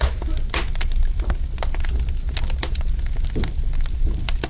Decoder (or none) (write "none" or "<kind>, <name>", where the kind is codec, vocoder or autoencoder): none